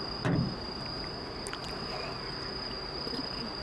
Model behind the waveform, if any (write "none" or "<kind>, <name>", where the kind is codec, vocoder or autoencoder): none